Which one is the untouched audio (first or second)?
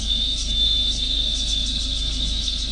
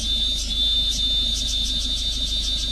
second